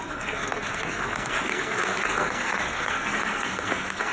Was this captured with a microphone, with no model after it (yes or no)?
no